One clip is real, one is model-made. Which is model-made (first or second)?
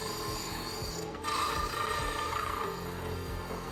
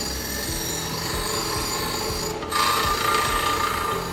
first